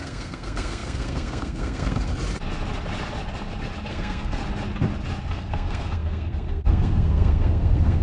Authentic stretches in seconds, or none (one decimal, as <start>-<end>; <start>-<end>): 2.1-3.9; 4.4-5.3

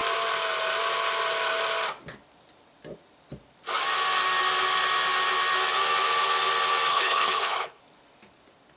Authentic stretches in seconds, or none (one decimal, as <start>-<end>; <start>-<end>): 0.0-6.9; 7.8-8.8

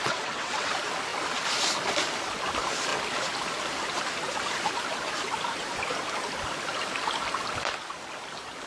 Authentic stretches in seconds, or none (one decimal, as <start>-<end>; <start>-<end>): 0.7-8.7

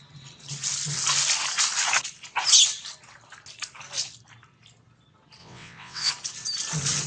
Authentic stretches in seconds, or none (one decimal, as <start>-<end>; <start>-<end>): 0.0-5.4; 6.1-7.1

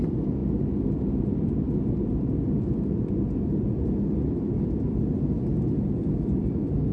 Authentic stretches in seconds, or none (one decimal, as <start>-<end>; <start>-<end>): 0.0-6.9

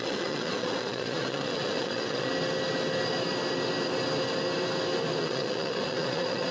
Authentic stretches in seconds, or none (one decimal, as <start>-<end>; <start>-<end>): 2.3-5.2

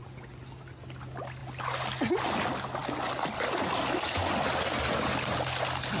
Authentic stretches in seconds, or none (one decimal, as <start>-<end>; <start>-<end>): 0.0-6.0

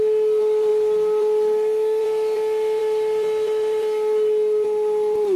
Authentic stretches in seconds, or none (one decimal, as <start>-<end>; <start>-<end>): 0.0-5.4